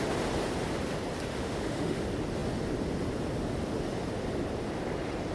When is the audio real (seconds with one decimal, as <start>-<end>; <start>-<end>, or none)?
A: 0.0-1.4; 2.0-5.3